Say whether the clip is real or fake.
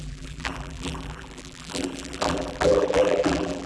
fake